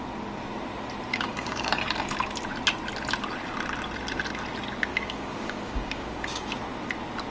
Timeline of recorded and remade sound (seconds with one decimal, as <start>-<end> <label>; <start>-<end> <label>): 0.0-1.1 recorded; 1.1-1.7 remade; 1.7-4.9 recorded; 4.9-6.5 remade; 6.5-7.3 recorded